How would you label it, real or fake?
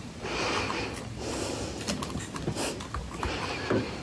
real